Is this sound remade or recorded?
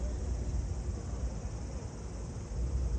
recorded